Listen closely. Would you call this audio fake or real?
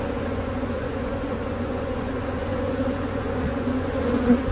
fake